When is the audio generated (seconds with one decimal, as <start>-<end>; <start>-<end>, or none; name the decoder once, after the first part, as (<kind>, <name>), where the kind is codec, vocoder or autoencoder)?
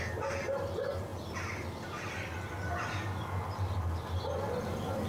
none